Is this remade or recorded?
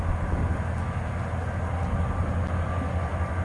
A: recorded